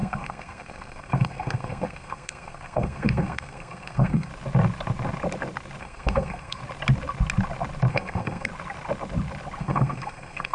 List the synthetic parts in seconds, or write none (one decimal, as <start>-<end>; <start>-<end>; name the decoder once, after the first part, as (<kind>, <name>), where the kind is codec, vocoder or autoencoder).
0.0-4.3 (codec, SNAC); 5.8-6.6; 7.9-8.5; 9.6-10.5